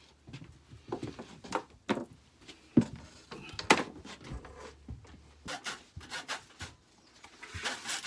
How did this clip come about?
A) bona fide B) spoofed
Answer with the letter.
A